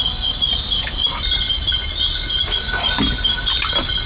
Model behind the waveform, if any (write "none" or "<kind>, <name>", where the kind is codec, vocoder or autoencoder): none